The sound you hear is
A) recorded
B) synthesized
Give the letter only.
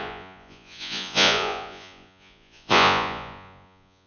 B